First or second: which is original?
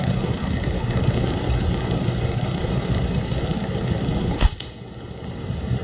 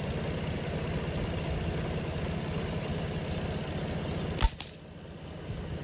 second